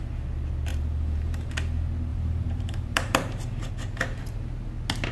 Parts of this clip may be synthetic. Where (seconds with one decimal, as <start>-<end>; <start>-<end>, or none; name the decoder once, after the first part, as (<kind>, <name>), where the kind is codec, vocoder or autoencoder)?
0.7-1.5 (vocoder, BigVGAN v2); 2.1-3.7